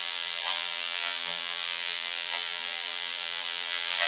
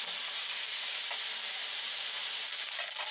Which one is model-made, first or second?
first